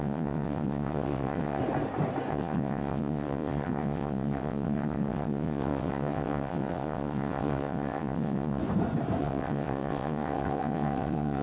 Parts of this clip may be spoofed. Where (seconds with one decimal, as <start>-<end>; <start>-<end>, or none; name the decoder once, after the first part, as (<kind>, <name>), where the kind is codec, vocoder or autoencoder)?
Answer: 0.0-1.6 (vocoder, WaveNeXt); 2.3-8.6; 9.2-11.4